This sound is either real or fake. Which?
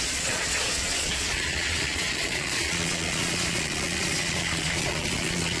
fake